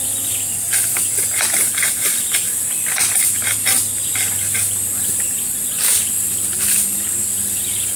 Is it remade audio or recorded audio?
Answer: recorded